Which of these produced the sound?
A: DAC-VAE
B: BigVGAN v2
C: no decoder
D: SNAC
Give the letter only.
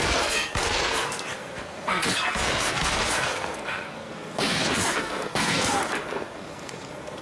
D